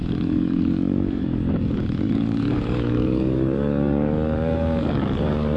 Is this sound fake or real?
fake